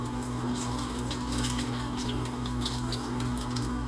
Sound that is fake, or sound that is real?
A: fake